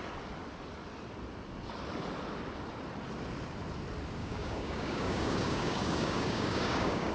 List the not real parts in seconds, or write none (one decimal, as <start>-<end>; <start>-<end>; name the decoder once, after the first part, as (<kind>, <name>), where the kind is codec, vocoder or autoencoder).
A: 4.2-7.1 (codec, DAC)